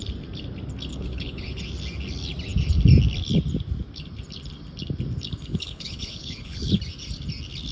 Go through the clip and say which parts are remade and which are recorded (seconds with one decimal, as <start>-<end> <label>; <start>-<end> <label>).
0.0-0.9 recorded; 0.9-1.6 remade; 1.6-5.5 recorded; 5.5-6.8 remade; 6.8-7.7 recorded